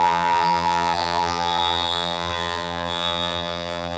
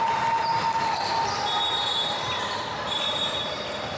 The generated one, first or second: first